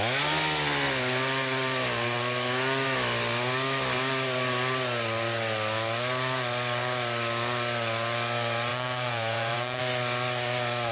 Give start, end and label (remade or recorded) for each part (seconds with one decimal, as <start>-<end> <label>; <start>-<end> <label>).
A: 0.0-8.7 recorded; 8.7-9.8 remade; 9.8-10.9 recorded